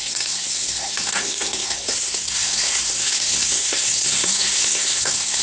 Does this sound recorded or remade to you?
remade